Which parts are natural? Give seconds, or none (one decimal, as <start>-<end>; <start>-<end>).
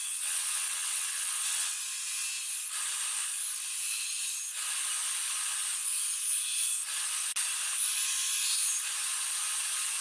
1.8-10.0